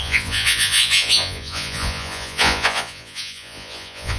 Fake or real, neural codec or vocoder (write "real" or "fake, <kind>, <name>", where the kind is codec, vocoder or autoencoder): fake, vocoder, Vocos